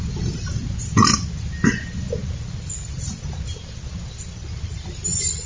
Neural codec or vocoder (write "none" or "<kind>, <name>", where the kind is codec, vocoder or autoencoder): none